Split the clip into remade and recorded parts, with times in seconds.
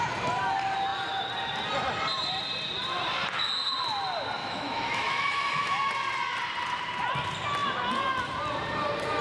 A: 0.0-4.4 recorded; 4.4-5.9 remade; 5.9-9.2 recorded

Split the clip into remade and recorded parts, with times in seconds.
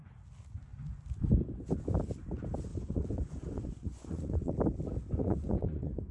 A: 0.0-2.7 recorded; 2.7-4.5 remade; 4.5-5.2 recorded; 5.2-6.1 remade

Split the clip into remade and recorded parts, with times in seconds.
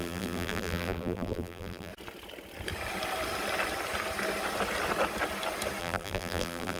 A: 0.0-1.9 remade; 1.9-5.8 recorded; 5.8-6.8 remade